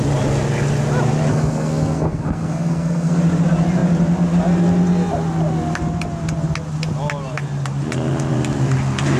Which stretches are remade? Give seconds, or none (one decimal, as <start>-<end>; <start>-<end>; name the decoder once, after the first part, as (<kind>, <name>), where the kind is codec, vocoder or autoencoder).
1.3-3.2 (codec, SNAC)